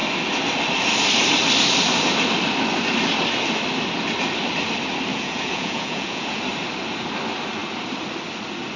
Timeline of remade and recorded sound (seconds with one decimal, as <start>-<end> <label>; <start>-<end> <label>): 0.0-5.1 recorded; 5.1-6.4 remade; 6.4-8.8 recorded